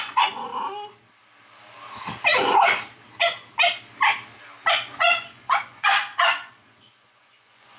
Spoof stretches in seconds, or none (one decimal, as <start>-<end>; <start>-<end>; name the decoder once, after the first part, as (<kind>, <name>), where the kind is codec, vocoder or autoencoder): 0.0-0.5 (vocoder, Vocos); 4.7-7.8